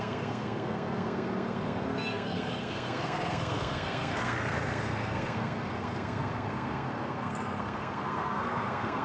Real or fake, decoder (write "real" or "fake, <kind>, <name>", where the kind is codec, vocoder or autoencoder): fake, codec, SNAC